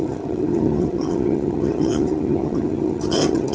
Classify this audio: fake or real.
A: fake